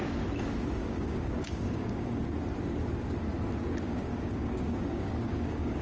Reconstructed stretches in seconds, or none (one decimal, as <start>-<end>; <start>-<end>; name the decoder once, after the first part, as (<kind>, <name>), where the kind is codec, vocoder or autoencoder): 0.7-2.2 (codec, DAC); 3.8-5.8